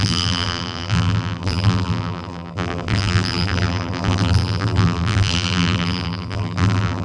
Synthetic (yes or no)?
yes